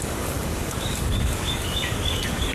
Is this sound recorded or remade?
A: remade